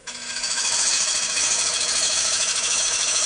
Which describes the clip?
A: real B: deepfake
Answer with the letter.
B